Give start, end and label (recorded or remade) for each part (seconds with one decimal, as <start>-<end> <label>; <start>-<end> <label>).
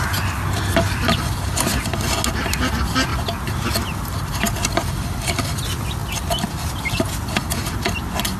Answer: 0.0-8.4 recorded